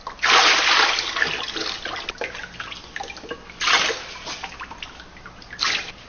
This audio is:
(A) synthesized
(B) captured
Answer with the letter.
B